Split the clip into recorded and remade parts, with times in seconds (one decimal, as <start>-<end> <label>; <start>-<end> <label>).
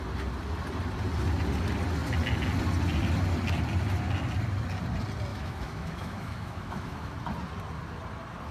0.0-5.3 recorded; 5.3-7.1 remade; 7.1-8.5 recorded